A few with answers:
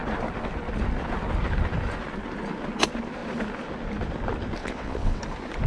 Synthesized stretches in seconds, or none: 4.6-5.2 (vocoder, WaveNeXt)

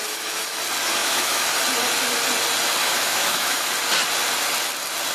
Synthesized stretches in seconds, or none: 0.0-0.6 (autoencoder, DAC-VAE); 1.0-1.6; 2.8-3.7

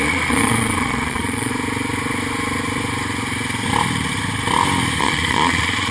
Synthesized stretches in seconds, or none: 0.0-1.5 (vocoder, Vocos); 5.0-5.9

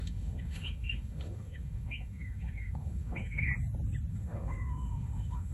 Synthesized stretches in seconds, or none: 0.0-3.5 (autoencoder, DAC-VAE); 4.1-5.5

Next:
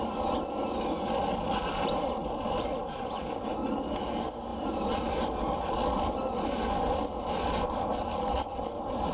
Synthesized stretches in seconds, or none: none

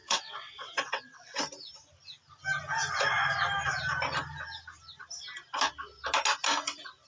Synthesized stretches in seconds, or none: 0.0-1.4 (vocoder, WaveNeXt)